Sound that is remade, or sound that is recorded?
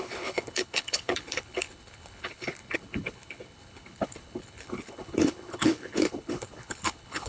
remade